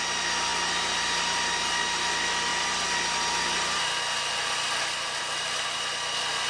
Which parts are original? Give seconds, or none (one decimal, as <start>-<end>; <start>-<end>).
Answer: 0.0-6.5